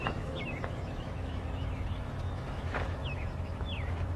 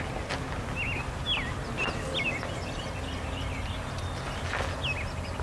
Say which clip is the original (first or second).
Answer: second